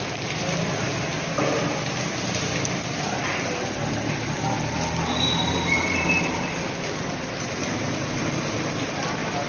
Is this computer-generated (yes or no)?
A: no